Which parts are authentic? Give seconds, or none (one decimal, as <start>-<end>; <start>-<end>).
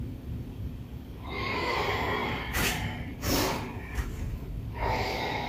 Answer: none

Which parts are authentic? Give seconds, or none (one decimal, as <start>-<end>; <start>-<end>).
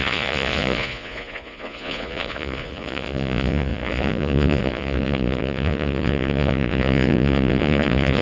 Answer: none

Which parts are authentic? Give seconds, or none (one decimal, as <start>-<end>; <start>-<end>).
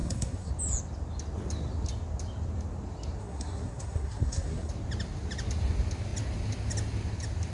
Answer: 0.5-3.2; 4.7-7.5